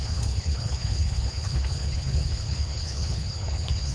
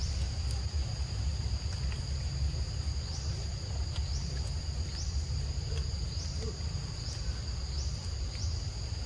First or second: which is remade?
first